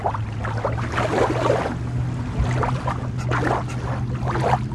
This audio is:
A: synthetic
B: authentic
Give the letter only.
B